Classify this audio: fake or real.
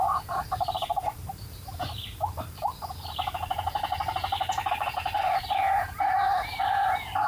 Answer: fake